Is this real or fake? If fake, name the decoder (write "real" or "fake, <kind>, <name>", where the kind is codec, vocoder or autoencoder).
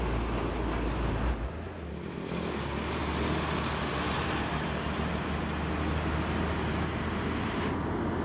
real